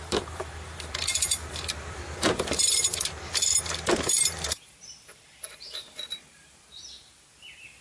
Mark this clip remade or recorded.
remade